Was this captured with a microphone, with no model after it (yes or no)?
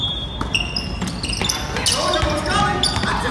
yes